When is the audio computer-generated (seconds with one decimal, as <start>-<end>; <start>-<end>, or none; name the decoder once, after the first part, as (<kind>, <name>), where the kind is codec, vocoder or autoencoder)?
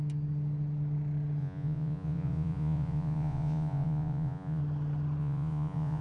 1.4-4.6 (vocoder, Vocos); 5.2-6.0